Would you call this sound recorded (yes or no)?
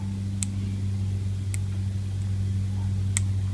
yes